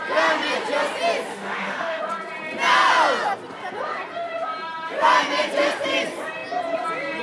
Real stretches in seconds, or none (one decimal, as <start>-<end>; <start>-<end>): 0.0-1.3; 2.0-7.2